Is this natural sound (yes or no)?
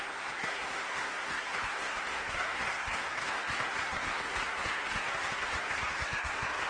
no